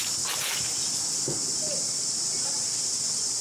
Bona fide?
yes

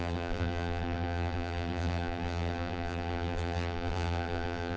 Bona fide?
no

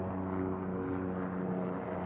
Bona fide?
yes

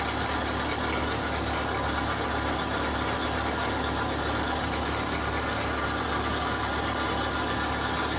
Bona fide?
yes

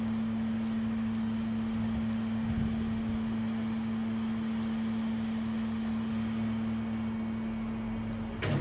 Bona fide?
yes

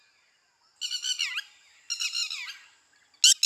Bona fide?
yes